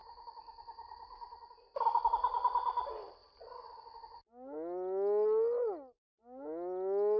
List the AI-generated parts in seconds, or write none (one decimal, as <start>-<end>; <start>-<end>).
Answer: 0.0-0.6